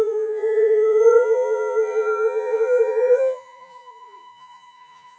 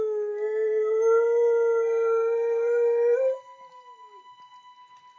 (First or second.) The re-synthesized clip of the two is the first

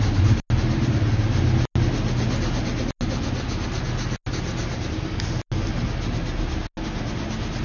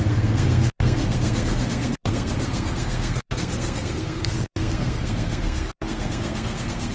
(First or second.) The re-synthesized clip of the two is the second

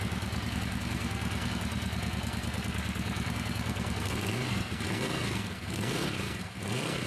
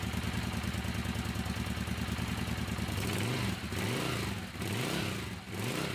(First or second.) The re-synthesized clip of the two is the first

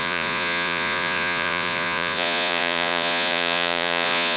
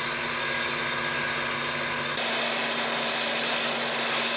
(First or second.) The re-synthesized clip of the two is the first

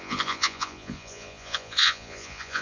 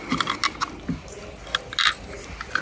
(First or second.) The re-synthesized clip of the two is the first